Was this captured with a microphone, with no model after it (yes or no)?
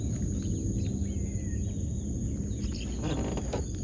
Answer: yes